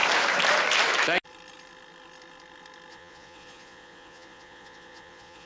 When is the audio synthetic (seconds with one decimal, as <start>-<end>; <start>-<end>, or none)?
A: 2.9-5.5